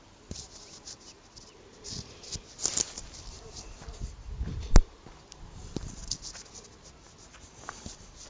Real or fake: real